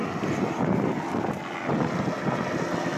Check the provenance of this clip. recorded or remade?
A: recorded